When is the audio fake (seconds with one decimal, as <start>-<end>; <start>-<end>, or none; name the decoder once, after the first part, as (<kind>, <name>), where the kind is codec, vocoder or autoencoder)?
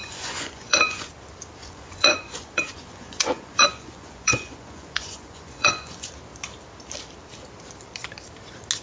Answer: 0.0-1.1 (vocoder, Vocos); 1.6-6.1